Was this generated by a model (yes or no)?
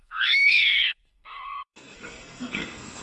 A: yes